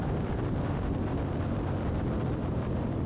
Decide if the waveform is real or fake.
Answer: fake